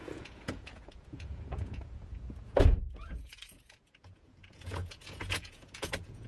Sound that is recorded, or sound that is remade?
remade